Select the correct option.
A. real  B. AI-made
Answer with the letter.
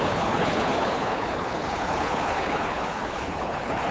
B